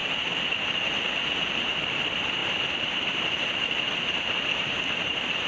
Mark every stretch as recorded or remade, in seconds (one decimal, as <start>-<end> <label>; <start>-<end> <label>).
0.0-1.5 recorded; 1.5-5.5 remade